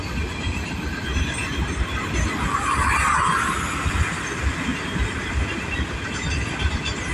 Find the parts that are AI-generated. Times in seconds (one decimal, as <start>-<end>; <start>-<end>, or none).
none